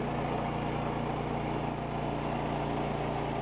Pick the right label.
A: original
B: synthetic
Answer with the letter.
A